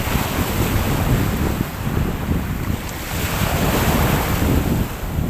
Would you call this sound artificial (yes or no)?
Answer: yes